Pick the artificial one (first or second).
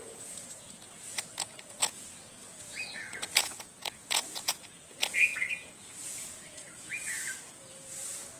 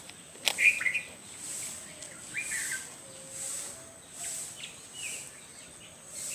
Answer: first